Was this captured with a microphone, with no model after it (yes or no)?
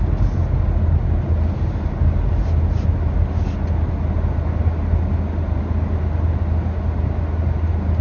yes